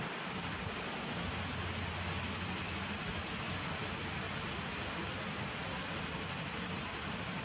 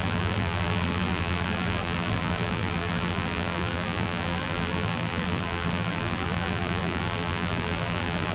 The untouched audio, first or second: first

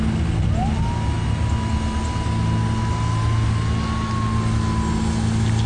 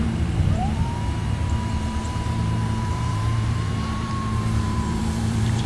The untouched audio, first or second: first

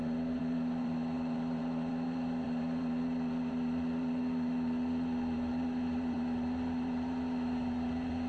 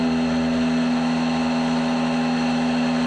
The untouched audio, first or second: second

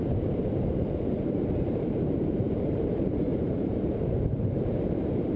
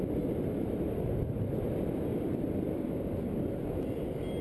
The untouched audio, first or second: second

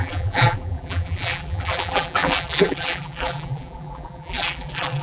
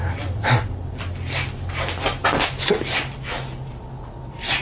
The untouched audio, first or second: second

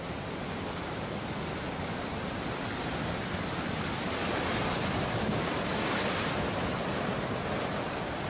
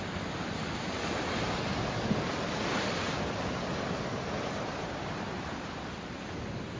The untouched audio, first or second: second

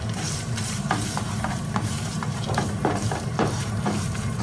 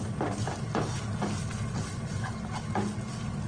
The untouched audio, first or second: second